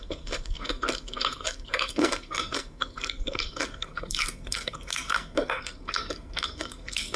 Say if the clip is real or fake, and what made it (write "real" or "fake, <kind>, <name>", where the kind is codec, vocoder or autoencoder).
fake, codec, SNAC